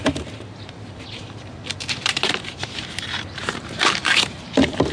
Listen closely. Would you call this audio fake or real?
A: fake